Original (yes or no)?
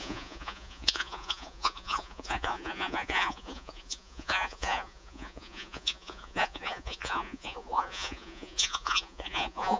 no